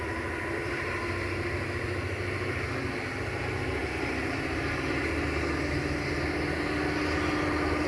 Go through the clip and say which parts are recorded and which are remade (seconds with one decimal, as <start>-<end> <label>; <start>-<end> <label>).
0.0-7.9 recorded